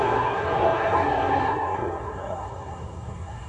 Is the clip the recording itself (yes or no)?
no